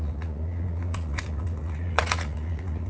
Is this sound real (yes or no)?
no